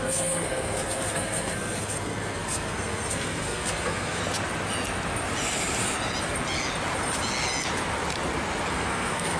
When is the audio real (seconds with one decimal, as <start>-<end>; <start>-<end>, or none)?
4.2-8.7